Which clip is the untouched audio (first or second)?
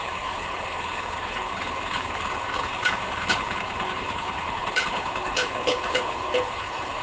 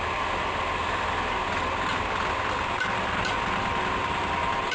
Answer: second